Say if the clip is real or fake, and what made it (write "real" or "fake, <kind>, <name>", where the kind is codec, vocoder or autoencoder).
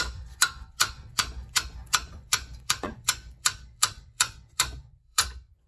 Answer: fake, vocoder, Vocos